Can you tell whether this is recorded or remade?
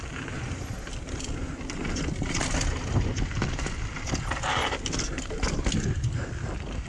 recorded